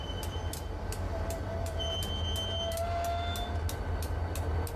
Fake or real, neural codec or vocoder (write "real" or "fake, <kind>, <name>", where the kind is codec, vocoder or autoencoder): real